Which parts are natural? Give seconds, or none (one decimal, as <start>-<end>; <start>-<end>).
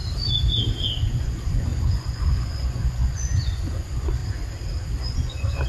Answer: 0.0-1.0; 4.2-5.0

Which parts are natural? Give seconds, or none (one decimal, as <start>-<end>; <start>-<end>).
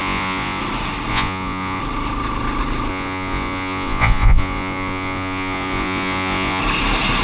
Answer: 0.6-1.1; 1.8-2.9; 6.6-7.2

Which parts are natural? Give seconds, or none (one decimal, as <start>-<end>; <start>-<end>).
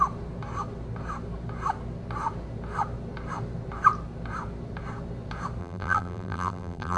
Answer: 0.0-5.6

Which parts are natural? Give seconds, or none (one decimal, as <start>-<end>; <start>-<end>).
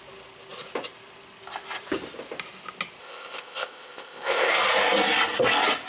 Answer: 0.0-3.0; 4.5-5.9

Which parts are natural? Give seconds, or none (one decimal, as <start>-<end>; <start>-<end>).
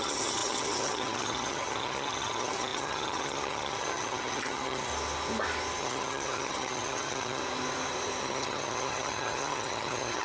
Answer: 4.9-5.8; 7.4-8.2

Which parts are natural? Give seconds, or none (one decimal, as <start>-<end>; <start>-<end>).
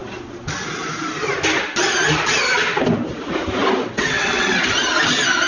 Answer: 0.0-3.8; 4.6-5.5